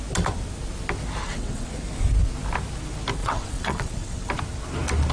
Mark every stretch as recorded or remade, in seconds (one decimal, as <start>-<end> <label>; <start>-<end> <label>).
0.0-1.2 recorded; 1.2-1.7 remade; 1.7-3.2 recorded; 3.2-4.3 remade; 4.3-5.1 recorded